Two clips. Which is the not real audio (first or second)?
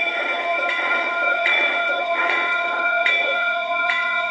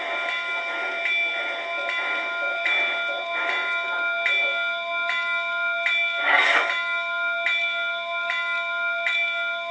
first